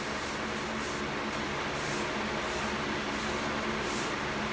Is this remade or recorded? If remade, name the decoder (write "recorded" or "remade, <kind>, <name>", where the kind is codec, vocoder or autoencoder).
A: recorded